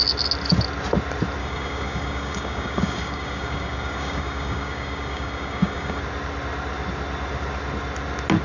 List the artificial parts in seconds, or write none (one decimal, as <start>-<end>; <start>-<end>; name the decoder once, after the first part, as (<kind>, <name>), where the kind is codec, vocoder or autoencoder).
1.4-6.0 (codec, DAC)